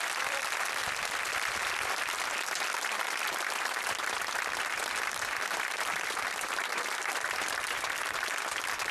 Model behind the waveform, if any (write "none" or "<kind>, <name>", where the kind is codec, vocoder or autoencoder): vocoder, BigVGAN v2